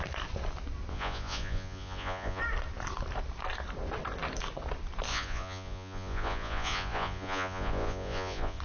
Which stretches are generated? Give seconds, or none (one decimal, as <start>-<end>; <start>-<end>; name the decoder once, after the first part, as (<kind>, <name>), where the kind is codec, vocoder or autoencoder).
0.9-2.4 (vocoder, Vocos); 5.1-8.6